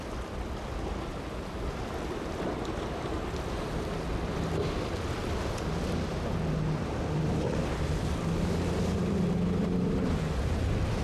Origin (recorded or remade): recorded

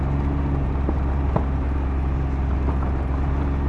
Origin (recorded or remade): recorded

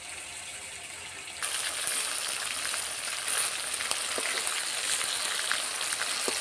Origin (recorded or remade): recorded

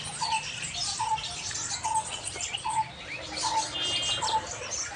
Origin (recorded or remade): recorded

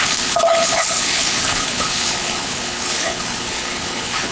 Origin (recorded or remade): remade